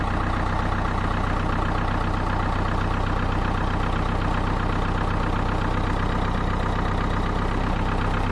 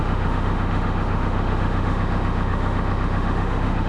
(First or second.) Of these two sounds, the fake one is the second